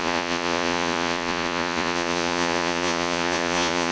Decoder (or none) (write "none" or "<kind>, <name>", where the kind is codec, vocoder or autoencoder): vocoder, Vocos